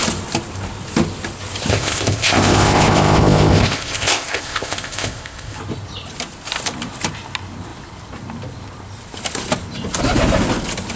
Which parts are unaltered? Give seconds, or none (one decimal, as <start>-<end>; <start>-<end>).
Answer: 0.0-1.7; 5.6-11.0

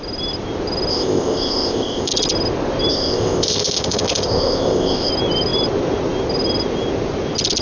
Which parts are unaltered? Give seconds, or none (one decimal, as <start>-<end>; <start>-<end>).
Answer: 0.0-0.9; 2.1-2.9; 5.1-7.6

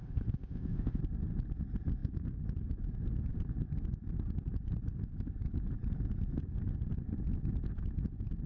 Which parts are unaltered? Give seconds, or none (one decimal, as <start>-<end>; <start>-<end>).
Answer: 1.0-8.5

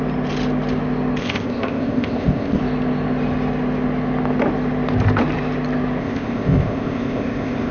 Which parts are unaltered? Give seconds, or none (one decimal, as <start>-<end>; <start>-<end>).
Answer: 0.0-1.2; 2.6-6.0

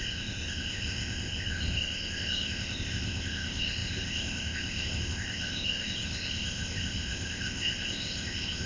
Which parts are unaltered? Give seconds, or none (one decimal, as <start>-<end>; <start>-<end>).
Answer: none

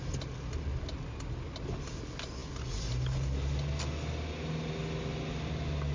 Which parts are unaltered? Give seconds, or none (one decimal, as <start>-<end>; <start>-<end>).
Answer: 0.0-5.9

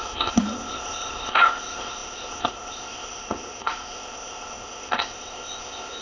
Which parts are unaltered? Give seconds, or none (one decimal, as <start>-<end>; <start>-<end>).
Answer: none

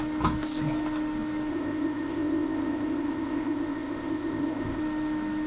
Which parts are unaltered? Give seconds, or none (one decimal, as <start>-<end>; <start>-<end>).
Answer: 0.0-1.5; 4.8-5.5